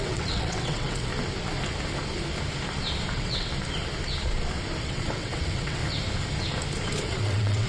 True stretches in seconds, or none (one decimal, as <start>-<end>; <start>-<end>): 1.1-3.1; 3.5-4.8; 5.8-7.0